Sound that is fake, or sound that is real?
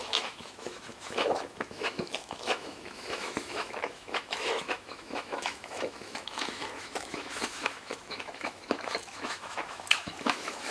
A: fake